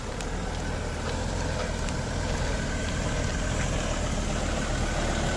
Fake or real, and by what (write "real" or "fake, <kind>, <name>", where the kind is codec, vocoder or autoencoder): real